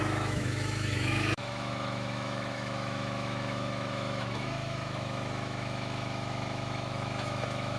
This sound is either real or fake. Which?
fake